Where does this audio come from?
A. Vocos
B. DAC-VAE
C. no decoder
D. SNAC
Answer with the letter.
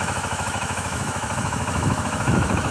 B